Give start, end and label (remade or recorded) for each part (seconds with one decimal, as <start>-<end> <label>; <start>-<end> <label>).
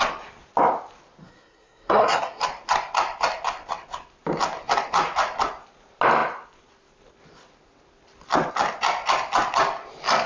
0.0-1.2 recorded; 1.2-2.4 remade; 2.4-10.3 recorded